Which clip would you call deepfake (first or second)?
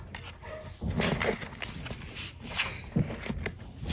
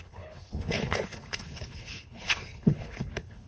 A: second